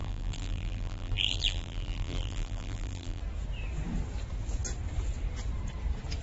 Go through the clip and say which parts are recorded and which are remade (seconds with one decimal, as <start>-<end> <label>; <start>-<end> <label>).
0.0-3.2 remade; 3.2-6.2 recorded